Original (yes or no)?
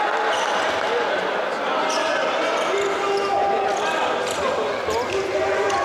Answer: yes